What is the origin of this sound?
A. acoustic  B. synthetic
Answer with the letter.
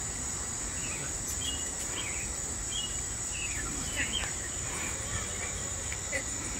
B